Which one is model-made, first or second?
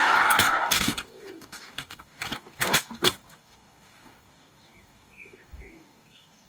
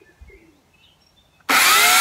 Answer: first